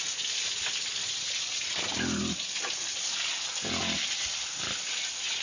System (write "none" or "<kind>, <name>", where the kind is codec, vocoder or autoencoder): none